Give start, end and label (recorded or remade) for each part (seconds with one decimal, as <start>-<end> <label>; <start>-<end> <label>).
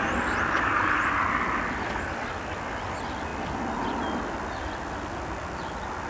0.0-6.1 recorded